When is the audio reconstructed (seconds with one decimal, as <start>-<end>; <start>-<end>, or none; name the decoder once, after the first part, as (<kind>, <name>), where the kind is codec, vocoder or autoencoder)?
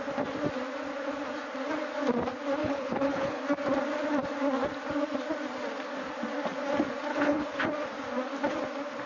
2.6-3.4 (codec, HILCodec); 7.1-7.6